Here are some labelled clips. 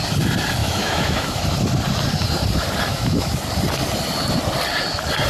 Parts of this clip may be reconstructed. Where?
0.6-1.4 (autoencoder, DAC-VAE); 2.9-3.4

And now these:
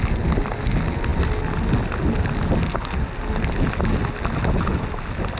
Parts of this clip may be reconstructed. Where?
none

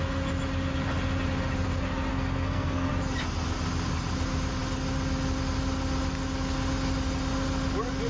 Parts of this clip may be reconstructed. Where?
2.1-2.9 (codec, SNAC)